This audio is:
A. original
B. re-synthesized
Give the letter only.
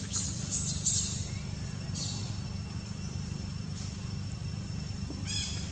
B